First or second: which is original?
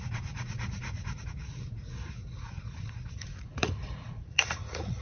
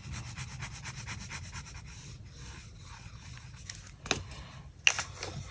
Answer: second